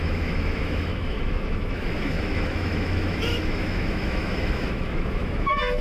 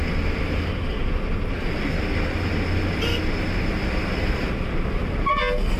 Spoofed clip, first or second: first